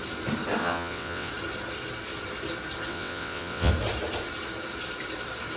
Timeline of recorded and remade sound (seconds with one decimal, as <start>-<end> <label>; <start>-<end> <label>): 0.0-0.6 recorded; 0.6-1.3 remade; 1.3-2.9 recorded; 2.9-3.7 remade; 3.7-5.6 recorded